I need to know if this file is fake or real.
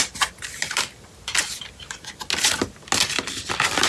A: real